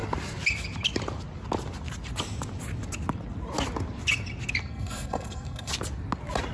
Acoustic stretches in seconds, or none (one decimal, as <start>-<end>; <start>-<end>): 0.0-4.6; 5.7-6.5